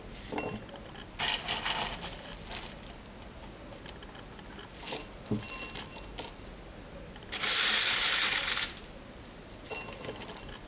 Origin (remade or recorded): recorded